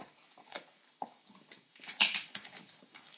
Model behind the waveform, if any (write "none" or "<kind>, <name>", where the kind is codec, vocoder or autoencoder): codec, DAC